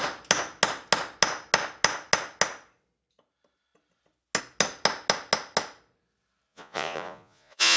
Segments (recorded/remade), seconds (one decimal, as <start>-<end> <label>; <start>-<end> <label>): 0.0-6.5 recorded; 6.5-7.8 remade